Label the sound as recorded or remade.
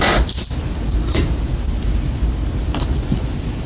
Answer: recorded